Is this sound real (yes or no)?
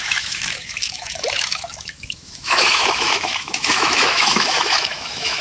no